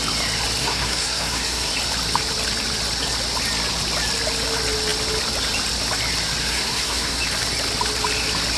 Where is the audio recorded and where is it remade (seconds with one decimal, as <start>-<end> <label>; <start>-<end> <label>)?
0.0-0.6 recorded; 0.6-1.7 remade; 1.7-6.4 recorded; 6.4-7.2 remade; 7.2-8.6 recorded